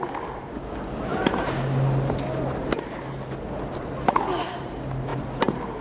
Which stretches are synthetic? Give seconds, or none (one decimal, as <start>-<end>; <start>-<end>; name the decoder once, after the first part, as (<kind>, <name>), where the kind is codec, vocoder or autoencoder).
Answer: 0.5-1.0 (codec, DAC)